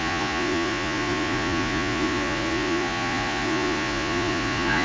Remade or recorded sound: remade